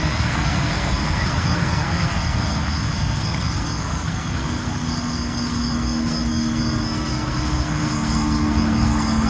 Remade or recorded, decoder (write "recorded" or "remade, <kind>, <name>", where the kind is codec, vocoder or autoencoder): remade, codec, SNAC